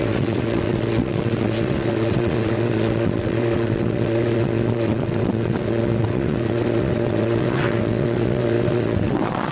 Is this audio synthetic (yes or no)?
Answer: yes